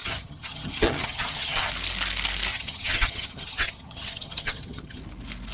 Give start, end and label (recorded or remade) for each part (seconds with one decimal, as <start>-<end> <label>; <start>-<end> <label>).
0.0-1.7 remade; 1.7-2.5 recorded; 2.5-5.0 remade; 5.0-5.5 recorded